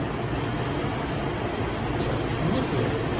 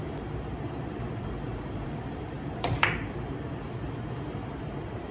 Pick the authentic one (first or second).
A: first